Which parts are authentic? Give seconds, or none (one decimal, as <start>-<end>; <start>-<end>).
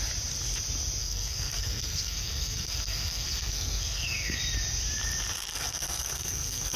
0.0-1.0; 4.4-5.5